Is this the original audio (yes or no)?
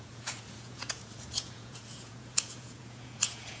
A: no